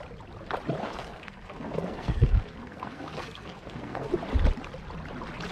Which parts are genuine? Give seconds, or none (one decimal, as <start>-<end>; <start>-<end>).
0.0-0.8; 4.1-5.5